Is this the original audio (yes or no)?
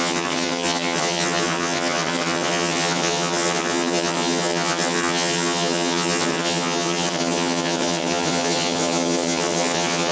no